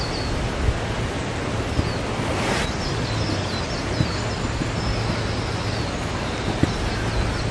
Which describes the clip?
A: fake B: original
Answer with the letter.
B